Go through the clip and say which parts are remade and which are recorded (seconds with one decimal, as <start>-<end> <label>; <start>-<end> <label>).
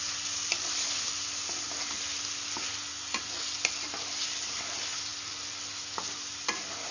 0.0-6.9 recorded